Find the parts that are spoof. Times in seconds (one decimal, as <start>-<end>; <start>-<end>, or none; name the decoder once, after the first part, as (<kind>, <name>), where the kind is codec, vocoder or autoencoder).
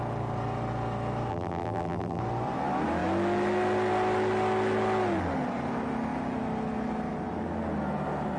1.3-2.2 (vocoder, BigVGAN v2)